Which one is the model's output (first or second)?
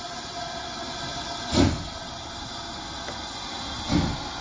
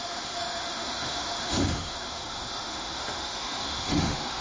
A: second